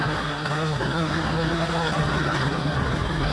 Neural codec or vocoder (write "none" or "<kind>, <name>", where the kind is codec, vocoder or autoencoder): codec, SNAC